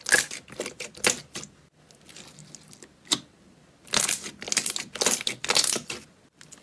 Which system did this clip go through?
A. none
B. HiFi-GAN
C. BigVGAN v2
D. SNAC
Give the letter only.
A